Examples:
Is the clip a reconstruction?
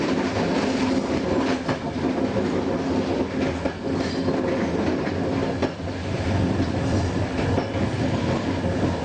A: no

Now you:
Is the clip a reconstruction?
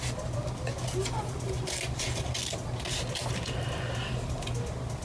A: no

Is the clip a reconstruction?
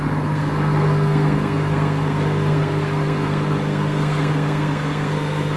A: yes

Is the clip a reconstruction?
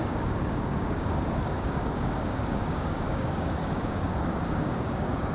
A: yes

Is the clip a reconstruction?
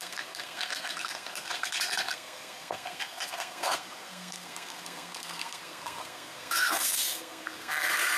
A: yes